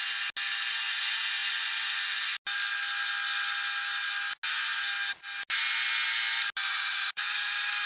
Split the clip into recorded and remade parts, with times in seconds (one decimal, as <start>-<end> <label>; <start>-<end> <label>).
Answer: 0.0-6.7 recorded; 6.7-7.5 remade; 7.5-7.9 recorded